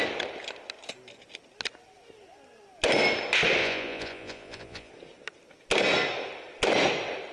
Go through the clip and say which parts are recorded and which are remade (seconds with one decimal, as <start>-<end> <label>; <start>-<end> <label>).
0.0-3.6 recorded; 3.6-4.9 remade; 4.9-7.3 recorded